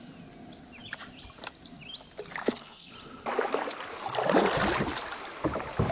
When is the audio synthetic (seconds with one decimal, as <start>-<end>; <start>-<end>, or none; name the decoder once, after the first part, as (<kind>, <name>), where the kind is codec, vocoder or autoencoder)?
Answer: 2.4-2.9 (codec, SNAC)